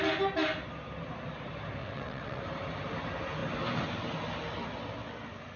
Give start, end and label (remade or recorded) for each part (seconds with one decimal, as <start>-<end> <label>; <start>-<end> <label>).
0.0-1.8 recorded; 1.8-2.4 remade; 2.4-5.6 recorded